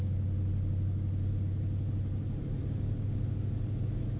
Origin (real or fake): real